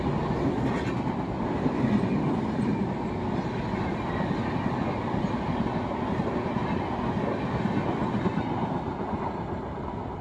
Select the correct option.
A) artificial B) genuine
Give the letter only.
B